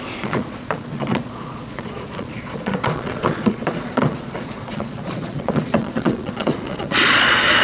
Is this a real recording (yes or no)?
no